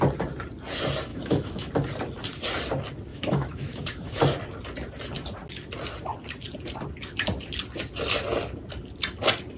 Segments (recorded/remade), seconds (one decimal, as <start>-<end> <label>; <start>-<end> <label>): 0.0-1.1 recorded; 1.1-1.7 remade; 1.7-3.1 recorded; 3.1-4.2 remade; 4.2-9.6 recorded